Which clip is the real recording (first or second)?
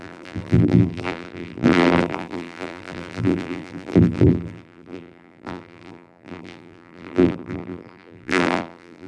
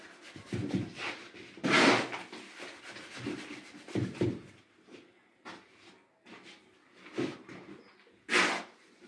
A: second